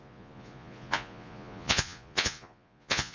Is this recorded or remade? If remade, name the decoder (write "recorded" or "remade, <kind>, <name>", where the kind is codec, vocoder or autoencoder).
remade, vocoder, Vocos